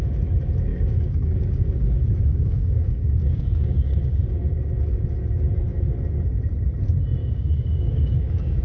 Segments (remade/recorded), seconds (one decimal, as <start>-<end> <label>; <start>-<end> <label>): 0.0-0.7 recorded; 0.7-4.2 remade; 4.2-7.2 recorded; 7.2-8.6 remade

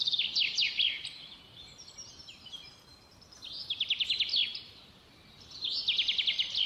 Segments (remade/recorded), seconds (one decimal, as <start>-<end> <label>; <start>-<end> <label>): 0.0-6.7 recorded

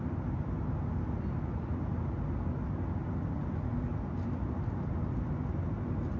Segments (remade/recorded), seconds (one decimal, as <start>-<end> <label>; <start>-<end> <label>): 0.0-6.2 recorded

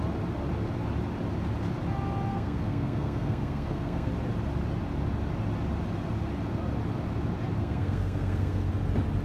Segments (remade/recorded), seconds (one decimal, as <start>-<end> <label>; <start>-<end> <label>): 0.0-2.3 recorded; 2.3-4.1 remade; 4.1-7.6 recorded; 7.6-8.7 remade; 8.7-9.2 recorded

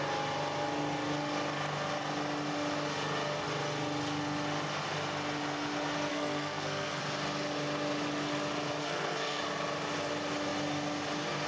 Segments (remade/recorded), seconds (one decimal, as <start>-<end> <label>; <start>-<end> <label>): 0.0-6.1 recorded; 6.1-7.0 remade; 7.0-8.8 recorded; 8.8-9.4 remade; 9.4-11.5 recorded

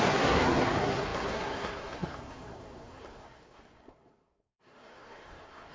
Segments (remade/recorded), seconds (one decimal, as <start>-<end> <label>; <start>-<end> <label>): 0.0-5.7 remade

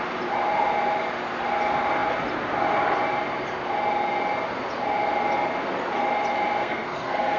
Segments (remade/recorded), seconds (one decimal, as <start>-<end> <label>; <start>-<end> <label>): 0.0-6.6 recorded; 6.6-7.4 remade